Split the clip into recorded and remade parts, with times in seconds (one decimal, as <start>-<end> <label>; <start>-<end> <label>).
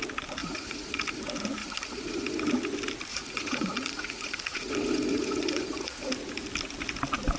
0.0-0.4 recorded; 0.4-1.2 remade; 1.2-1.6 recorded; 1.6-2.4 remade; 2.4-3.1 recorded; 3.1-6.1 remade; 6.1-7.4 recorded